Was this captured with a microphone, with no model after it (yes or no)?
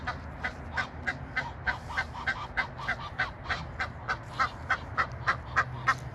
yes